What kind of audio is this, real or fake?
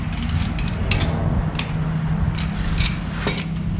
real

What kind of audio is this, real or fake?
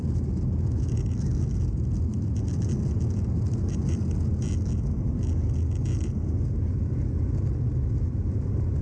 real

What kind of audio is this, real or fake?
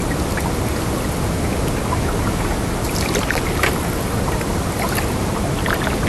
real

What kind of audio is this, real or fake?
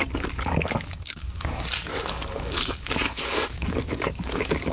fake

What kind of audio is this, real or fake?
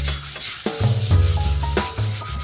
real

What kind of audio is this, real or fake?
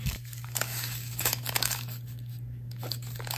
fake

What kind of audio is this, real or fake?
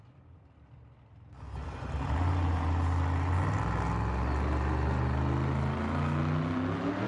real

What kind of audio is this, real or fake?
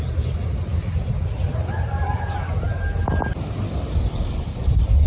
real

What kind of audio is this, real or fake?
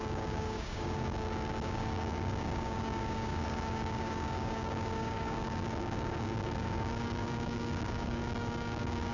fake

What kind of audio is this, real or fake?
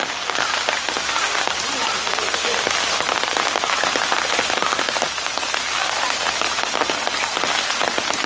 real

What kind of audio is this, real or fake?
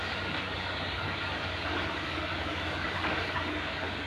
fake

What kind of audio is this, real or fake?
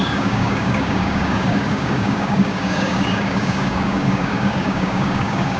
fake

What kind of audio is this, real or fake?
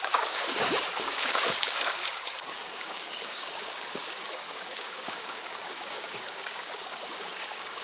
fake